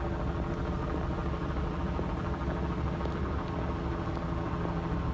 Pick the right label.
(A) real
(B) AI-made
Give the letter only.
A